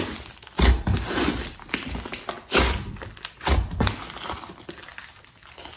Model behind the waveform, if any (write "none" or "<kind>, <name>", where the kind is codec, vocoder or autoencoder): none